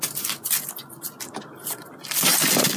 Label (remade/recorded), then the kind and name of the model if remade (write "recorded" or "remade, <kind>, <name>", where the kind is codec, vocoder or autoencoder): recorded